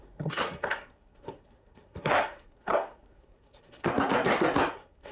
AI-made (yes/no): yes